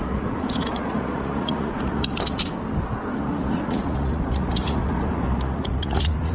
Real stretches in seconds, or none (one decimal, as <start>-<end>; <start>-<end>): 2.4-3.1